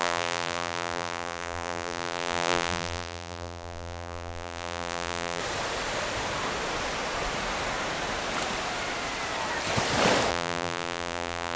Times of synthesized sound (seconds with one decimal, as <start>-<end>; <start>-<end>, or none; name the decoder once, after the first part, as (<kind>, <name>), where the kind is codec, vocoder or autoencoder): 0.0-5.4 (vocoder, BigVGAN v2); 10.3-11.6